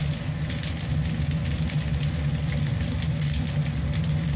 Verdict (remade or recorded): recorded